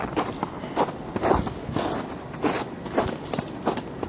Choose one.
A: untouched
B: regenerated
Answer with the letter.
A